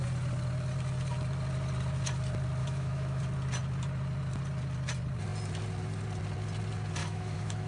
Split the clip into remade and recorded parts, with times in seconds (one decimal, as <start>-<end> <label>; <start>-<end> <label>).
0.0-2.6 recorded; 2.6-3.2 remade; 3.2-7.0 recorded; 7.0-7.7 remade